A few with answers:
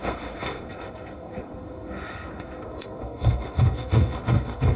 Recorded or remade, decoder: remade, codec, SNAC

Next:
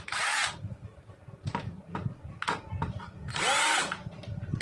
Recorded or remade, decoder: recorded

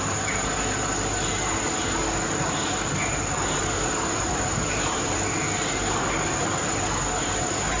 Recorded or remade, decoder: recorded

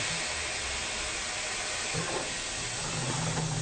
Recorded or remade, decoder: recorded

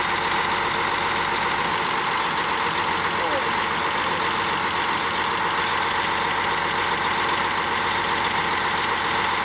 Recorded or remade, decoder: recorded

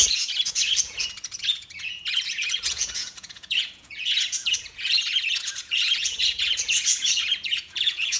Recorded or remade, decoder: remade, vocoder, Vocos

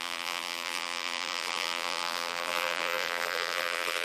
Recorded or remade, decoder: remade, vocoder, BigVGAN v2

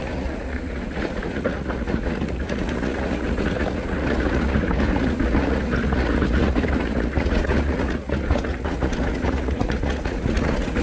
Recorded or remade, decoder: remade, vocoder, Vocos